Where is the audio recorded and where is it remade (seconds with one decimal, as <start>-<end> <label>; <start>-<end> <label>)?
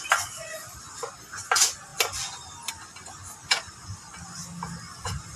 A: 0.0-1.9 recorded; 1.9-2.7 remade; 2.7-5.4 recorded